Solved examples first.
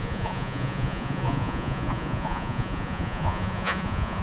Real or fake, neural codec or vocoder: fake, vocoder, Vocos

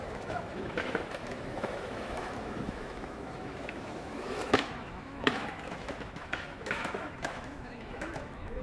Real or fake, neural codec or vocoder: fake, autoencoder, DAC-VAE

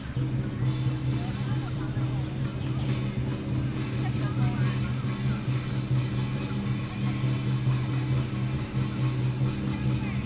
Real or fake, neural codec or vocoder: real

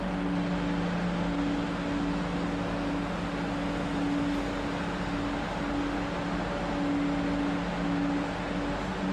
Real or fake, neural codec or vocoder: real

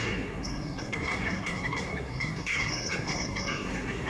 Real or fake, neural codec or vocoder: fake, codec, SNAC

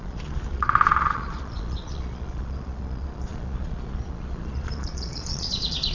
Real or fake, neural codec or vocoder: fake, vocoder, Vocos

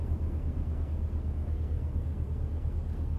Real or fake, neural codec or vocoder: fake, codec, SNAC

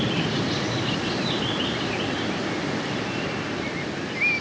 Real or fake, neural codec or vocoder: real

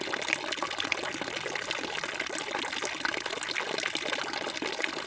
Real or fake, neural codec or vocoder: real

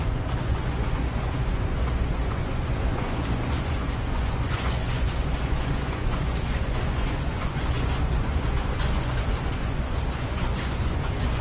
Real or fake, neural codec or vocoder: fake, vocoder, Vocos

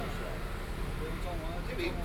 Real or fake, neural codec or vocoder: real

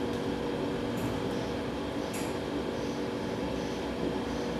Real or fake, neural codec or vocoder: real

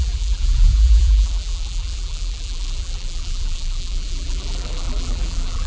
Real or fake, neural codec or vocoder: fake, vocoder, BigVGAN v2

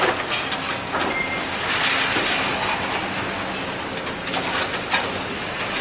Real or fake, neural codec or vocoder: real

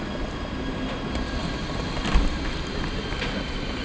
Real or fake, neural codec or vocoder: real